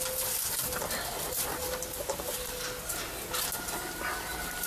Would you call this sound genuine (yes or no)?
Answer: yes